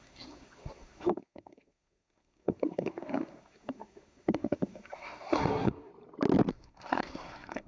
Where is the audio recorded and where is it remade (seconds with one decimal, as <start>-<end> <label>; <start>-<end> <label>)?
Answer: 0.0-5.9 remade; 5.9-6.5 recorded; 6.5-7.7 remade